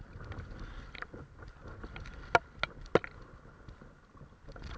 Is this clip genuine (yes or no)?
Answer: yes